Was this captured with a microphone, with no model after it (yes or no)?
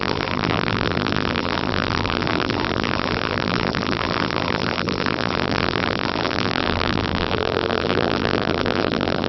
no